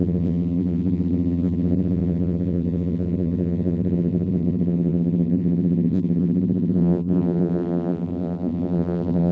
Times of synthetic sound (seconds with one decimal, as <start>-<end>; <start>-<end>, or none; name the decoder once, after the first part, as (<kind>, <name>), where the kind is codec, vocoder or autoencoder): 0.0-9.3 (vocoder, BigVGAN v2)